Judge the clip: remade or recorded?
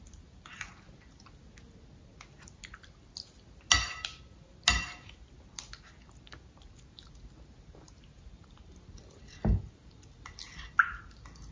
recorded